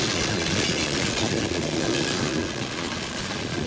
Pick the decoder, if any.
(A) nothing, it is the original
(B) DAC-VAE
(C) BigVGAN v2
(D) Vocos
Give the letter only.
D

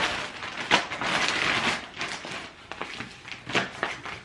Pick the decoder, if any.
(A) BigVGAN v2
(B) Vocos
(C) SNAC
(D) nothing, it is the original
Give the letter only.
D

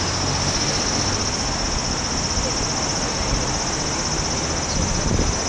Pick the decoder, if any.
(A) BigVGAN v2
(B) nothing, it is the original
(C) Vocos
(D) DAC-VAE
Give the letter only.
B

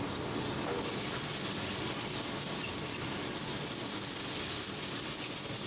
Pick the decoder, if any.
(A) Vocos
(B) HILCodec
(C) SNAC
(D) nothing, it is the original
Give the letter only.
D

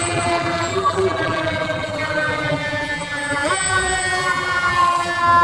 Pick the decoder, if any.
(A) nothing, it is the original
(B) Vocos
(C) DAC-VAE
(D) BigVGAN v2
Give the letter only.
D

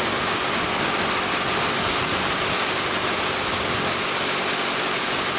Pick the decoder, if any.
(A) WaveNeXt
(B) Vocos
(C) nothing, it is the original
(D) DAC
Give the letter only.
C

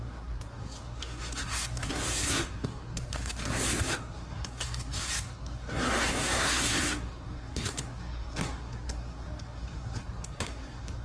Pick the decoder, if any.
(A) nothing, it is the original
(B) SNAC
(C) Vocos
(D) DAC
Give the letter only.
B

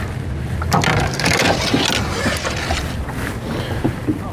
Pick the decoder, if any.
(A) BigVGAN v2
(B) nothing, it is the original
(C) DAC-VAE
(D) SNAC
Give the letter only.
B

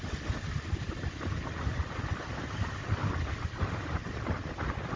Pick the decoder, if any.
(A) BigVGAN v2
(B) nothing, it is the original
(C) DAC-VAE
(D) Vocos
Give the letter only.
B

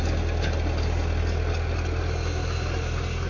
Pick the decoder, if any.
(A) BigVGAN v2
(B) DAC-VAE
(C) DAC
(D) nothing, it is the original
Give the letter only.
D